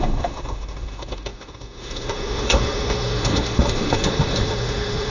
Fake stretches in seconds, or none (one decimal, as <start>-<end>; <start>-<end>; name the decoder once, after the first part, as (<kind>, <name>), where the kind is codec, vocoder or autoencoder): 0.0-5.1 (autoencoder, DAC-VAE)